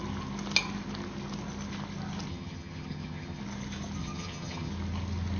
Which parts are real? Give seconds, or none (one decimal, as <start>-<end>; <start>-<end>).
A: 0.0-2.3; 3.4-4.0; 4.7-5.4